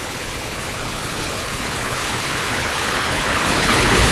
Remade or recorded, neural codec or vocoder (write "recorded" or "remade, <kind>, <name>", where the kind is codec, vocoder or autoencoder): remade, codec, HILCodec